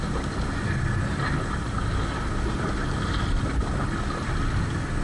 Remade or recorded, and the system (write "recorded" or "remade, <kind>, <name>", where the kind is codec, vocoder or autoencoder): recorded